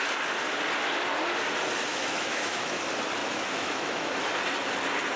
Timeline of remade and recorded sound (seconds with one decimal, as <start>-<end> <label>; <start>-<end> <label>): 0.0-1.9 recorded; 1.9-2.8 remade; 2.8-3.2 recorded; 3.2-4.1 remade; 4.1-5.2 recorded